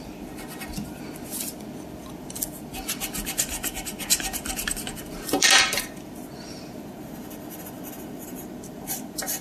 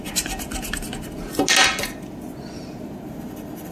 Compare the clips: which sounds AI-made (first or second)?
first